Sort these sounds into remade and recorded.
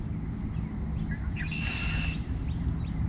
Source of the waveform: recorded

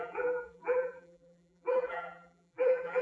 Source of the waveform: remade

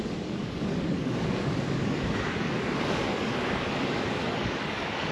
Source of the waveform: remade